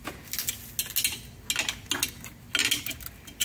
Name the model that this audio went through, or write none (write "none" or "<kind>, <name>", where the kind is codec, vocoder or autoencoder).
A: none